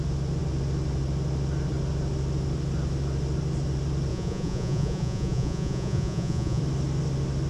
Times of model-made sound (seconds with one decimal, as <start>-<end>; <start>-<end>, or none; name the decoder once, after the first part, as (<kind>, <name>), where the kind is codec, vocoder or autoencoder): 4.1-6.6 (vocoder, Vocos)